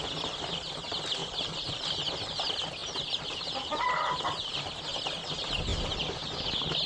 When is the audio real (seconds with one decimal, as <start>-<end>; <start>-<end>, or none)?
0.0-1.2; 1.9-2.8; 4.1-6.9